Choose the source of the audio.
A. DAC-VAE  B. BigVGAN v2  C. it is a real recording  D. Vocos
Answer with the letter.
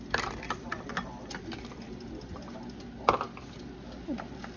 C